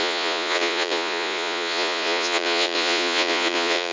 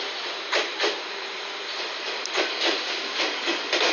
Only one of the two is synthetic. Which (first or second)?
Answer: first